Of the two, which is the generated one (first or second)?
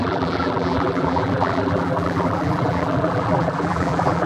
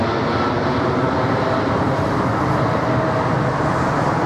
first